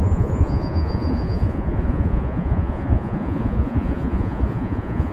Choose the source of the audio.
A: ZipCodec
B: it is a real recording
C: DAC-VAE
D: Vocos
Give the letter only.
D